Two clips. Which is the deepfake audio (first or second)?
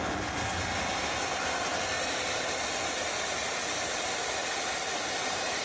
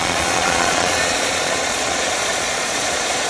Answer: second